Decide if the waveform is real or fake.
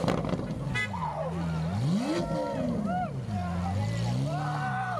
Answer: real